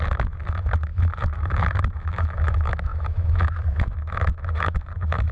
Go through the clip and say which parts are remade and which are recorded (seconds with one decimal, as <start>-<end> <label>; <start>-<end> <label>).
0.0-5.3 remade